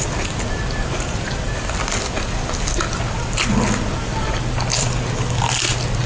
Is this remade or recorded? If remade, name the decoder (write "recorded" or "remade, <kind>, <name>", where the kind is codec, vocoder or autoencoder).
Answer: recorded